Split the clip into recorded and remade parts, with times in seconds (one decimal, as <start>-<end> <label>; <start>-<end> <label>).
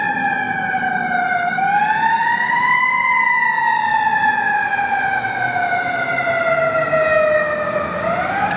0.0-8.6 recorded